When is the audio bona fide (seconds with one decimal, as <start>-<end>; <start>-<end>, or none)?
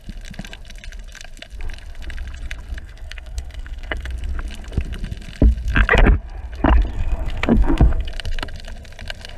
0.0-2.8; 4.1-6.9; 8.1-9.4